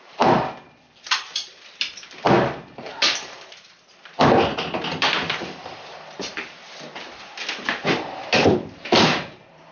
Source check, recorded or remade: remade